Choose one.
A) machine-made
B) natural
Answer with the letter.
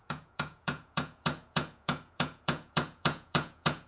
A